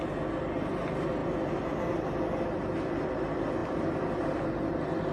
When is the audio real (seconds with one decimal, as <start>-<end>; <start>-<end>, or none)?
0.0-5.1

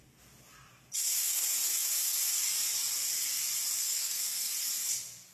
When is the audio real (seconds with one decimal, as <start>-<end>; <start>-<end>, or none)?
0.0-3.8; 4.5-5.3

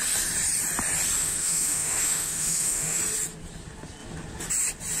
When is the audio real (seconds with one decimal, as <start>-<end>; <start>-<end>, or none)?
0.0-1.2; 3.0-5.0

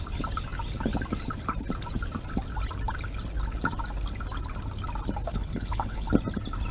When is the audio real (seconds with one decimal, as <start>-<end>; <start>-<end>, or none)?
0.0-5.3; 6.1-6.7